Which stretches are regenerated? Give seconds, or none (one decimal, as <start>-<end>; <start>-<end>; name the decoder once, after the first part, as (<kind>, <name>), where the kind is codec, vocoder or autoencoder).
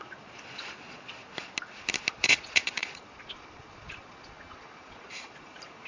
0.0-1.2 (vocoder, Vocos); 2.1-5.9